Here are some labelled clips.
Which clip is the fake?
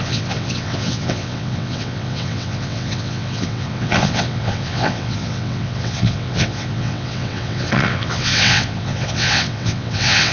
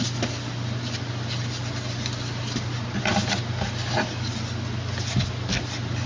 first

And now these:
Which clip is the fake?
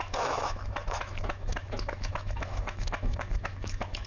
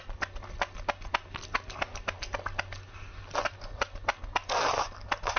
first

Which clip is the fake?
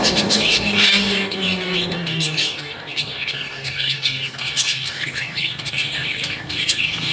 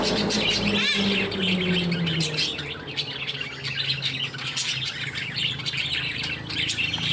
first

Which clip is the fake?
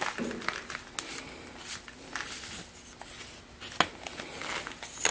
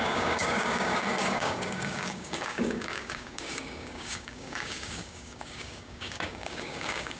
second